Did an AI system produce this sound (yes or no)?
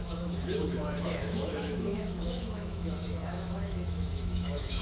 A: yes